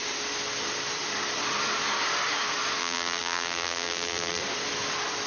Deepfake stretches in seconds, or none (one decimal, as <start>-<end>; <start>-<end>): 2.8-4.4